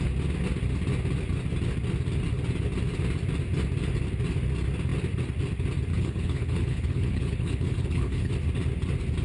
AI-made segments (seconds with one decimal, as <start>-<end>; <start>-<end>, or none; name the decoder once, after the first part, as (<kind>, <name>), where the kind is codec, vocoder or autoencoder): 5.9-8.3 (codec, HILCodec)